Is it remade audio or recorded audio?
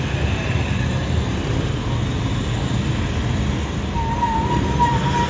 recorded